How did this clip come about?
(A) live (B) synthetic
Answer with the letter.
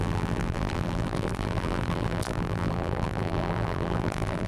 B